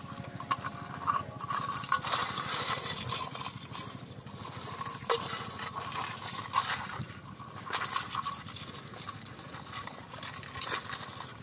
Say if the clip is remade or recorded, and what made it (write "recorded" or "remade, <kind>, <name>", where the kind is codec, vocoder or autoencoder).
recorded